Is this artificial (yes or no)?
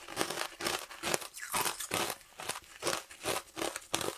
no